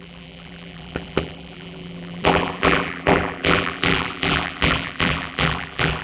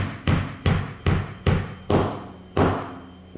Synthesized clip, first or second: first